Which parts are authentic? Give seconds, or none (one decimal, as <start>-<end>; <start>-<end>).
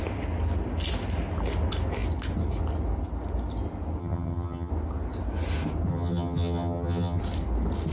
0.0-4.0; 4.7-5.9; 7.2-7.9